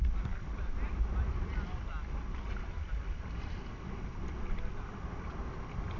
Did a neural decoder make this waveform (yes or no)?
no